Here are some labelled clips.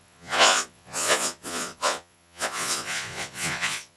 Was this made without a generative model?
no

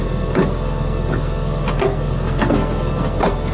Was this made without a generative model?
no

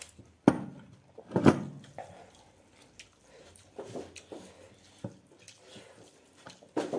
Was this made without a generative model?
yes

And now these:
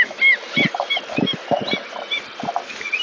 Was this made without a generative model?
yes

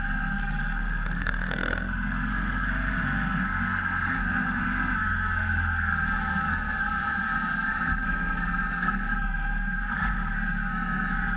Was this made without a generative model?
no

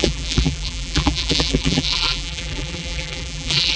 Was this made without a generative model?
no